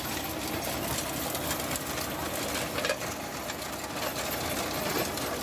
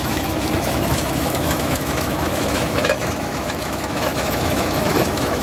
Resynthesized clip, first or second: second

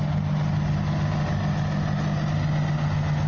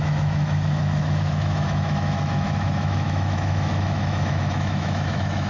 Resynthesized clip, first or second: second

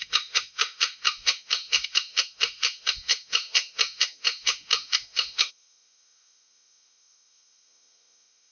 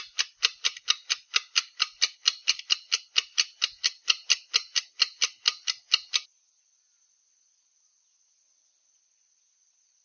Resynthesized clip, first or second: first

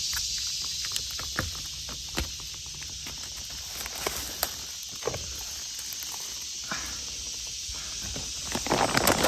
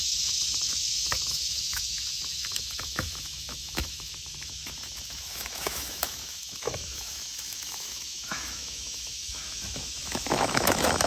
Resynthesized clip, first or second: second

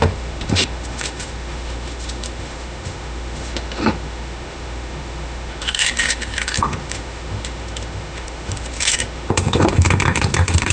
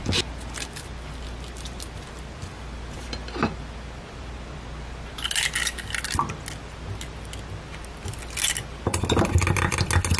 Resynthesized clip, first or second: first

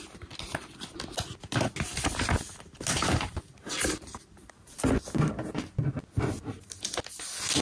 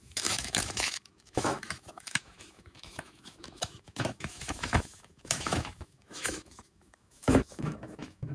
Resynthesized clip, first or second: second